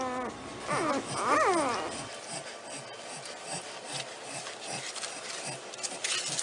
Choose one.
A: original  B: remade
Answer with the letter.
A